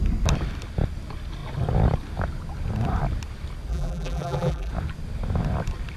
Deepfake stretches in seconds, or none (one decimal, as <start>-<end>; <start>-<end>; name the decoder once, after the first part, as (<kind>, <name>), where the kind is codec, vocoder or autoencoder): 3.7-4.7 (vocoder, BigVGAN v2)

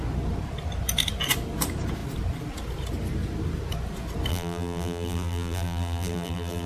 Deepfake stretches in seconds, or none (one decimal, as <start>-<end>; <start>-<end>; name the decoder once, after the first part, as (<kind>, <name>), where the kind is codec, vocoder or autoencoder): 4.3-6.7 (vocoder, BigVGAN v2)

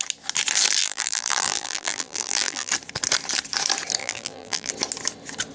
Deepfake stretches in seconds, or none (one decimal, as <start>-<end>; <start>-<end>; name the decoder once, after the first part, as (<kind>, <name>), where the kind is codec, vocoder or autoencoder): 0.8-2.7 (vocoder, BigVGAN v2); 4.0-4.7

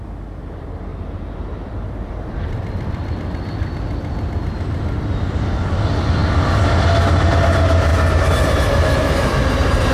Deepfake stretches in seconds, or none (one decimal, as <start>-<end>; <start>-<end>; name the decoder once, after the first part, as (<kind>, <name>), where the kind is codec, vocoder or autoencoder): 0.9-3.1 (vocoder, BigVGAN v2); 7.9-9.9